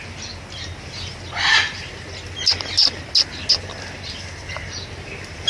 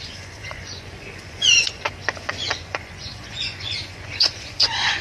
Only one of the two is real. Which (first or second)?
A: first